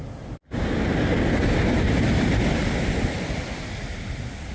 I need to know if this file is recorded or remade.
recorded